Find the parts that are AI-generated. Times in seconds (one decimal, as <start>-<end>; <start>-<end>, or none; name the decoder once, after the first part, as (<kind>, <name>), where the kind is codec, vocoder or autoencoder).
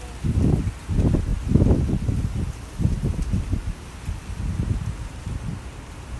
none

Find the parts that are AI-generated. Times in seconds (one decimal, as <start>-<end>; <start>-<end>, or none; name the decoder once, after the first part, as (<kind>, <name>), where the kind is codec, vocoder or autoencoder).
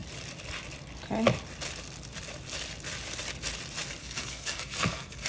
4.0-5.3 (codec, SNAC)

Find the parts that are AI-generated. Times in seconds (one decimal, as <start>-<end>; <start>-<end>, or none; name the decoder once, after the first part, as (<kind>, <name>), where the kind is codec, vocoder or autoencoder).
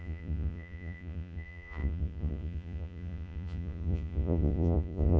0.0-5.2 (vocoder, Vocos)